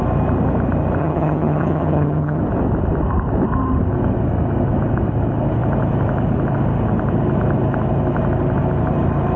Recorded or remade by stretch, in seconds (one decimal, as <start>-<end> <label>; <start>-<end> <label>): 0.0-1.0 recorded; 1.0-2.4 remade; 2.4-9.4 recorded